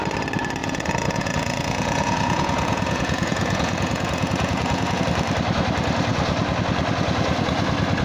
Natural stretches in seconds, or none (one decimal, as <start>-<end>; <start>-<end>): 0.0-0.6; 5.0-8.0